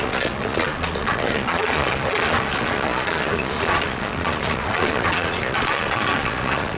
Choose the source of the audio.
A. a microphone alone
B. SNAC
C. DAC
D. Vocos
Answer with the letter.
D